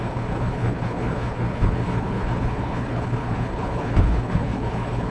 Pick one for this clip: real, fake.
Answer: fake